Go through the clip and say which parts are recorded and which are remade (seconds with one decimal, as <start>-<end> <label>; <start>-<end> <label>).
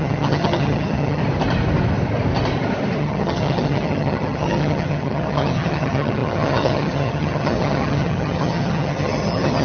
0.0-1.2 remade; 1.2-3.0 recorded; 3.0-9.6 remade